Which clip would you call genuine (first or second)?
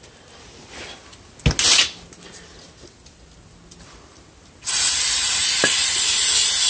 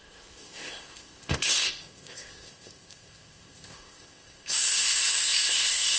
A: first